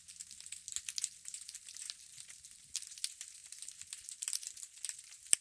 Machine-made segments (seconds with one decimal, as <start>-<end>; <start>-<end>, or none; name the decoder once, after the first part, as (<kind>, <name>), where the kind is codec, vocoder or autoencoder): none